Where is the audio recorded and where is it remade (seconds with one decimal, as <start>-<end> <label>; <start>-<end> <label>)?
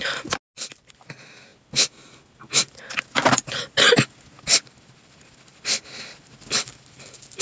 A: 0.0-7.4 recorded